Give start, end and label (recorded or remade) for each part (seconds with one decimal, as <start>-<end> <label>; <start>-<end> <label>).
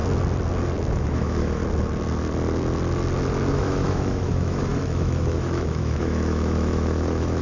0.0-0.9 recorded; 0.9-1.6 remade; 1.6-3.5 recorded; 3.5-7.4 remade